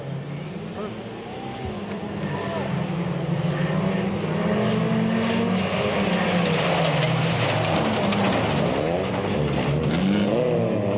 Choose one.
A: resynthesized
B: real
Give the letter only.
B